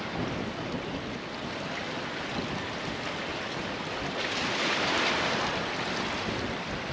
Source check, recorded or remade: recorded